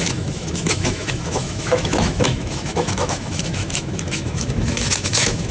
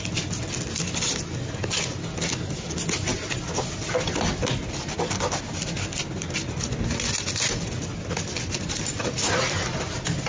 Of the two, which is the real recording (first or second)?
second